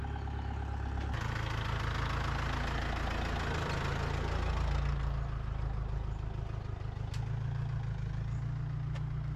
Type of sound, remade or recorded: recorded